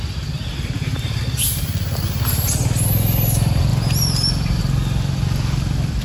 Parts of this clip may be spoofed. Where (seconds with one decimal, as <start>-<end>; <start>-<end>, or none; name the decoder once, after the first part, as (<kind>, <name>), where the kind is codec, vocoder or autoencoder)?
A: 3.7-4.6 (vocoder, BigVGAN v2)